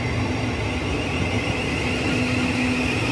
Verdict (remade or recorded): recorded